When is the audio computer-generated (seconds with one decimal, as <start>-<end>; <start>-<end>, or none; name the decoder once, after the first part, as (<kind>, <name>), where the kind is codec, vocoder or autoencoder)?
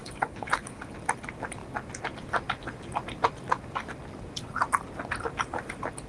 0.0-0.8 (codec, HILCodec)